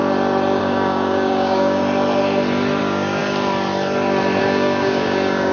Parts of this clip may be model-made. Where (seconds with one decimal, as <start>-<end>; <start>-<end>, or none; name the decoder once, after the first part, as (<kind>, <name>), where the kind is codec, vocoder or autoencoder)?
0.6-1.8 (codec, DAC); 2.8-3.2; 4.4-5.5